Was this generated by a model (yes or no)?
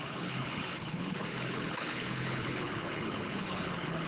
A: yes